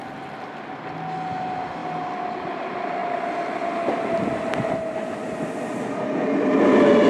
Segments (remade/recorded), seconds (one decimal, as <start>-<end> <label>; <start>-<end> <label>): 0.0-7.1 recorded